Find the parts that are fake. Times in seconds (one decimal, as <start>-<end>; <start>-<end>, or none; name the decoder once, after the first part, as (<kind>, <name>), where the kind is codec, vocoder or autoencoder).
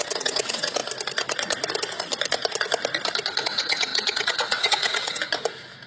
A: 0.0-0.8 (vocoder, WaveNeXt); 3.4-5.2